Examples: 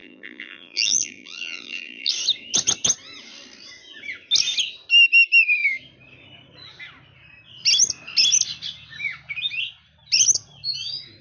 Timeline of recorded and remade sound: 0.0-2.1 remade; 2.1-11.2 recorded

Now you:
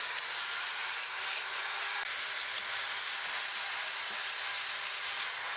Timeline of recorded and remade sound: 0.0-5.6 recorded

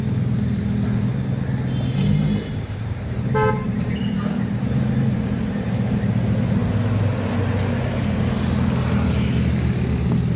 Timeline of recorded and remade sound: 0.0-2.4 recorded; 2.4-6.1 remade; 6.1-10.4 recorded

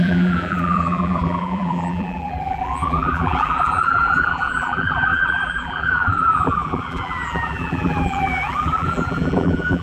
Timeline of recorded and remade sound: 0.0-9.8 remade

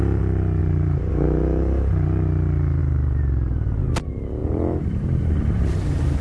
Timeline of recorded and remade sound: 0.0-0.6 recorded; 0.6-1.1 remade; 1.1-2.8 recorded; 2.8-3.8 remade; 3.8-4.4 recorded; 4.4-5.3 remade; 5.3-6.2 recorded

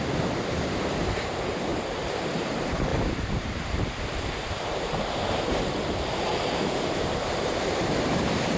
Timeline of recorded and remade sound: 0.0-8.6 remade

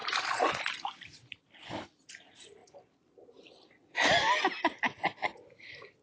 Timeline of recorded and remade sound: 0.0-0.5 remade; 0.5-2.6 recorded; 2.6-4.4 remade; 4.4-6.0 recorded